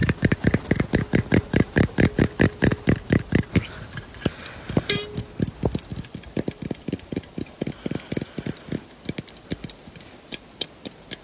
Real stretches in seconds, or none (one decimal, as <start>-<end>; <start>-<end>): 0.0-5.9; 7.7-11.2